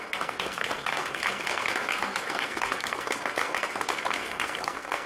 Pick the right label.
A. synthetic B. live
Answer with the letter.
A